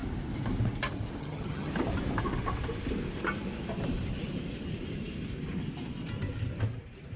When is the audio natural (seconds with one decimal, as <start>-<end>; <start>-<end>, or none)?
0.0-1.2; 1.7-7.2